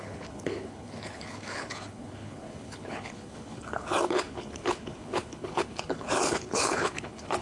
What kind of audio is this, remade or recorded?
remade